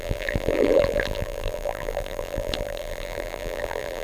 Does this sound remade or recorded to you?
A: remade